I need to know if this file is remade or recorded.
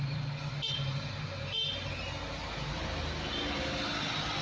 recorded